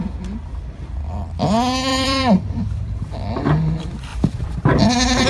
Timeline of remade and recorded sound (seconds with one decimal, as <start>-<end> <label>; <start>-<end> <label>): 0.0-1.9 recorded; 1.9-3.4 remade; 3.4-4.1 recorded; 4.1-5.3 remade